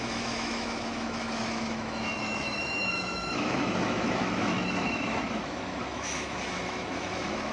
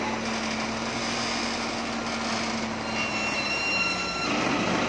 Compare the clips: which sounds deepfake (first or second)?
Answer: first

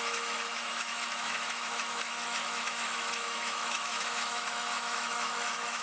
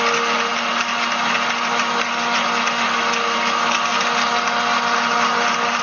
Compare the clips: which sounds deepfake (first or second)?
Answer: first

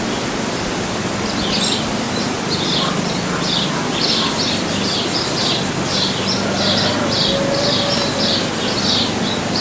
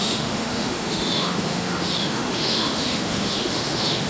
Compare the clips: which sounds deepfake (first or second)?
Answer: second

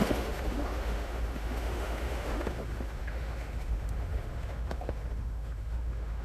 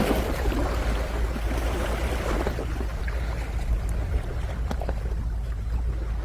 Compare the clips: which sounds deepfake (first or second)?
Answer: first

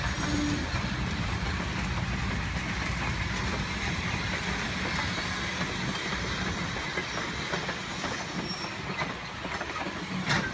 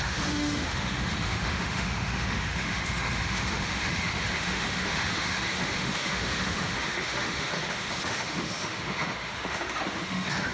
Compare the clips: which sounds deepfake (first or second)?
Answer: second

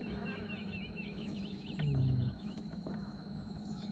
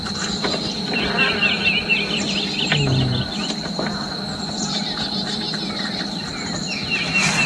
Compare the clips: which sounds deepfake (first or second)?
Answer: first